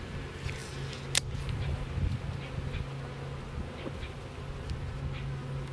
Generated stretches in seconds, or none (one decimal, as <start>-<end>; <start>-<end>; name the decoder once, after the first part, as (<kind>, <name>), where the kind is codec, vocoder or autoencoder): none